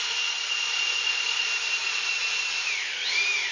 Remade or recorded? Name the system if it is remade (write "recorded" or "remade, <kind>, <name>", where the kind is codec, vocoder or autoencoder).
remade, vocoder, BigVGAN v2